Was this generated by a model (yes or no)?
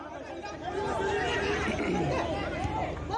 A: no